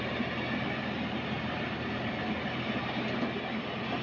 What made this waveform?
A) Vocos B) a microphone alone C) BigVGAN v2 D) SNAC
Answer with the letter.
B